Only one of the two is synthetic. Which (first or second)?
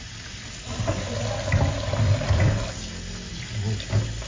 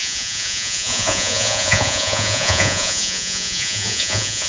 second